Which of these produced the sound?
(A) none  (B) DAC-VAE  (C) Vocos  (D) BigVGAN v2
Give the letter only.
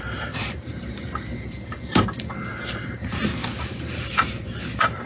D